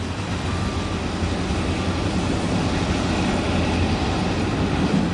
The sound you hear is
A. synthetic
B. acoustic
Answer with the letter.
B